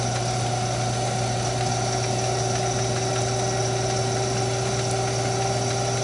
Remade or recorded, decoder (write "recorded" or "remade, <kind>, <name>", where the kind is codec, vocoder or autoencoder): recorded